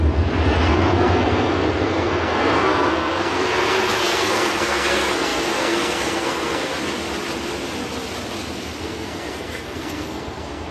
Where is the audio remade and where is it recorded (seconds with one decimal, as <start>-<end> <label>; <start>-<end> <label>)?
0.0-6.7 remade; 6.7-8.8 recorded; 8.8-10.7 remade